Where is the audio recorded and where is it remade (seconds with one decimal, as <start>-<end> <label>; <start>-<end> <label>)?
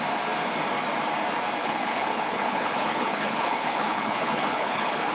0.0-1.6 recorded; 1.6-5.1 remade